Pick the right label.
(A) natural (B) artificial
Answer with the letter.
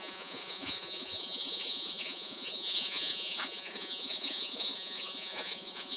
B